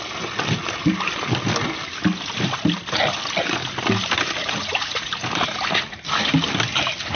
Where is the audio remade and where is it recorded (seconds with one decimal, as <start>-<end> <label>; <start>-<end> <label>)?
0.0-4.4 recorded; 4.4-5.1 remade; 5.1-7.2 recorded